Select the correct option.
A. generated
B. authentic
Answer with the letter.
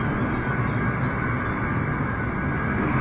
B